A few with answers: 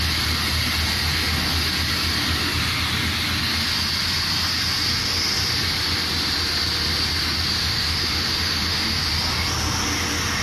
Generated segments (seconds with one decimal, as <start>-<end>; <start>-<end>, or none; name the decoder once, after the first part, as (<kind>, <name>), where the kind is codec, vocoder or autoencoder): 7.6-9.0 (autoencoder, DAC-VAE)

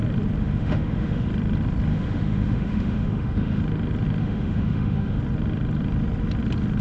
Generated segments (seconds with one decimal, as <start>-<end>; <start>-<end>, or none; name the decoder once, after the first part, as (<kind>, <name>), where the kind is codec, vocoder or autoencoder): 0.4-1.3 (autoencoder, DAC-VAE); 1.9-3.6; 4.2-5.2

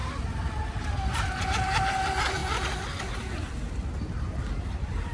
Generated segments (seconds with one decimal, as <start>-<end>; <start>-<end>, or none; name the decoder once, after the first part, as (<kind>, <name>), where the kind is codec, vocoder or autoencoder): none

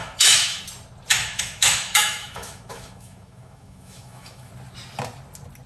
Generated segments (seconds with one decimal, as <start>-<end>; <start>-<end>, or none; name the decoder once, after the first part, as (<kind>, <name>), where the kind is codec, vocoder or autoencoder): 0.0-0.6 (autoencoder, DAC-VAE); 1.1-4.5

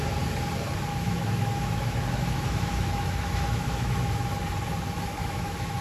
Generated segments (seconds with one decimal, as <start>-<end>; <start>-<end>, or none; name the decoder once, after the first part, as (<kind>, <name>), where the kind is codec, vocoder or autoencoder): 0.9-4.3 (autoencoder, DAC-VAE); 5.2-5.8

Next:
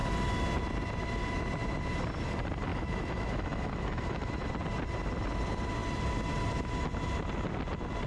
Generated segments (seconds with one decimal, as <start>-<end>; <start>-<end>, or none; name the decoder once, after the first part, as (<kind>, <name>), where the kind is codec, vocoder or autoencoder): 2.7-4.5 (autoencoder, DAC-VAE)

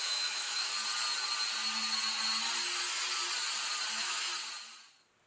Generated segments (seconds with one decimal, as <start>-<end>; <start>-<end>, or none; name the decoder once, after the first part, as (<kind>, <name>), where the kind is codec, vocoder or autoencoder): 0.0-0.7 (autoencoder, DAC-VAE); 3.9-4.3

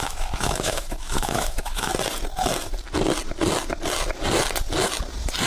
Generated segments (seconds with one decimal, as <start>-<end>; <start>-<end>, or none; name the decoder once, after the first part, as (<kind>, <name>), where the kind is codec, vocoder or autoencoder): 0.0-1.9 (autoencoder, DAC-VAE)